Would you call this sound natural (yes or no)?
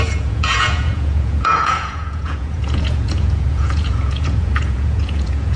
no